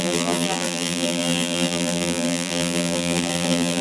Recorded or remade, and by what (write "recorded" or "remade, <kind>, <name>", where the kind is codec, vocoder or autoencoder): remade, vocoder, BigVGAN v2